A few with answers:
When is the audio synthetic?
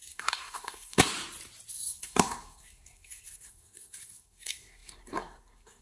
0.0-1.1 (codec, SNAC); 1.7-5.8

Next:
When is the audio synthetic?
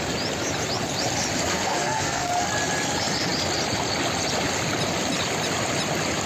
1.5-2.3 (codec, SNAC)